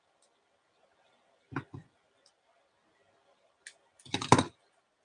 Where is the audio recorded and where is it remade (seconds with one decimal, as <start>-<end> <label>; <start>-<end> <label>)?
0.0-5.0 recorded